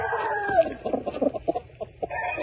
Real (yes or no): yes